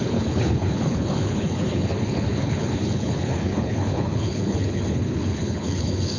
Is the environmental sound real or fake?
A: fake